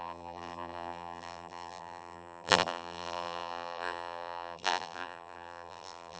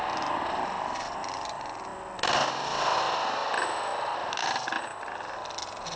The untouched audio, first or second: second